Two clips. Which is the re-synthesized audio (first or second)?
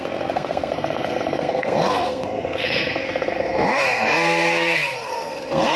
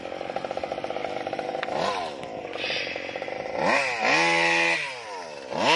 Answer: first